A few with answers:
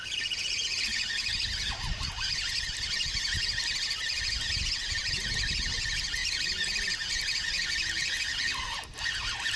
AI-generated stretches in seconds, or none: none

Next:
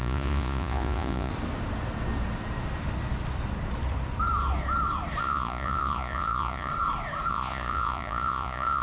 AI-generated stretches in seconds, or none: 0.0-1.3 (vocoder, Vocos); 5.2-6.7; 7.3-8.8

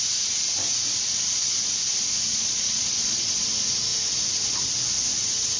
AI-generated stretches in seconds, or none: 2.3-3.4 (vocoder, Vocos)

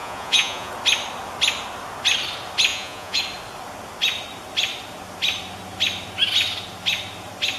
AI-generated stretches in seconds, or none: 0.0-0.7 (vocoder, Vocos); 2.7-3.2

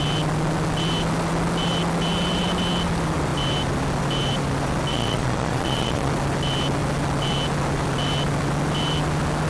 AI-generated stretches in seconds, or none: 4.9-6.1 (vocoder, Vocos)

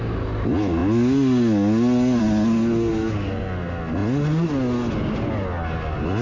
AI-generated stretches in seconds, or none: none